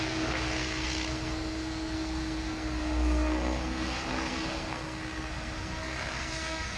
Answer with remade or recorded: remade